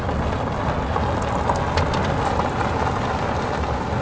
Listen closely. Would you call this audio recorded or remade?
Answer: recorded